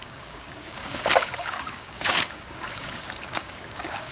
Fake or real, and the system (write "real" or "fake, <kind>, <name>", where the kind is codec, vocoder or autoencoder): fake, codec, DAC